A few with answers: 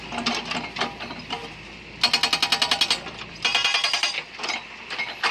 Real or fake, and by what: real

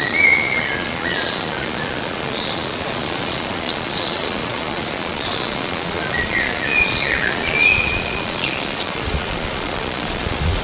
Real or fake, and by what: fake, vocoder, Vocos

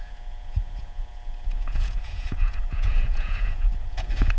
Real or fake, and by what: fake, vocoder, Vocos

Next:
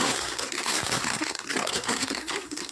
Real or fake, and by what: fake, codec, SNAC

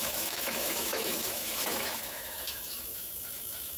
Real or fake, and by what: fake, autoencoder, DAC-VAE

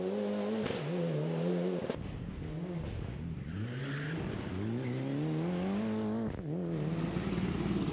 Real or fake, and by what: real